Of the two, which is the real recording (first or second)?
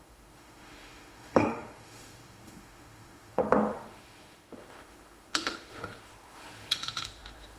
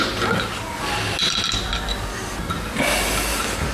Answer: second